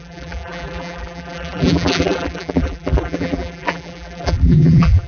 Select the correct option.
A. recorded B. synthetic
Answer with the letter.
B